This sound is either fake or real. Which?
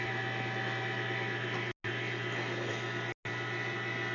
real